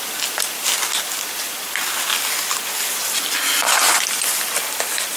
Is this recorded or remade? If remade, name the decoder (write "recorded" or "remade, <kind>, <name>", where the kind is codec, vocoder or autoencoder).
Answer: recorded